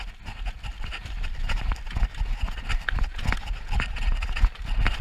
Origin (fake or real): real